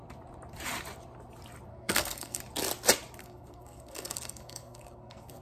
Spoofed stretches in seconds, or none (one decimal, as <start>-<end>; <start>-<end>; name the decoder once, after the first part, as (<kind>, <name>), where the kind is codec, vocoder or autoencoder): 1.7-2.4 (codec, SNAC); 3.2-5.4